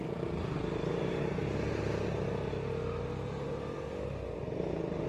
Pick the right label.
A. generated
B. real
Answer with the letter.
B